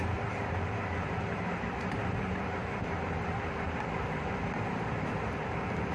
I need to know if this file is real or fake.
fake